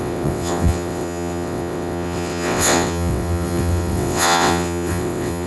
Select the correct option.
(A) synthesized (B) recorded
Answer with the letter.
A